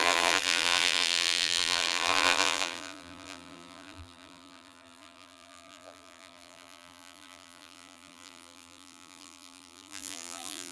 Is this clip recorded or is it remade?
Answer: remade